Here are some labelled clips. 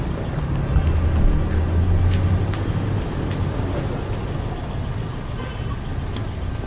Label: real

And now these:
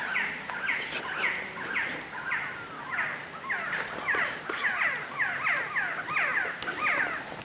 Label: real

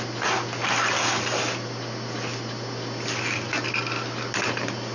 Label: real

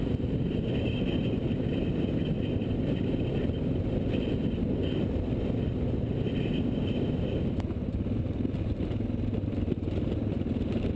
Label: real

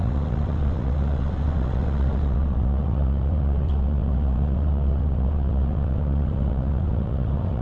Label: fake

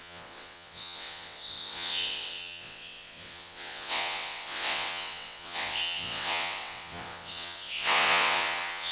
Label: fake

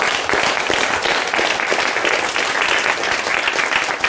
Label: real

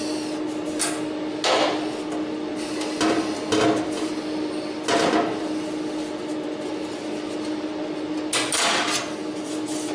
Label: real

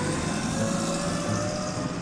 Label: real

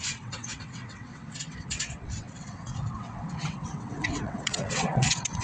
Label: fake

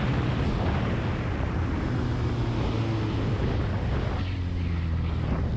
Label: real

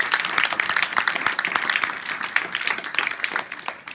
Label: real